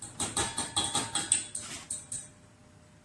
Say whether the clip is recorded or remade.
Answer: recorded